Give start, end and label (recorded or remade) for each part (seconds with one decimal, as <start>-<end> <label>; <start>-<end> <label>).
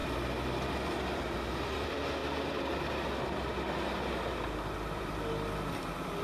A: 0.0-2.2 remade; 2.2-4.3 recorded; 4.3-6.2 remade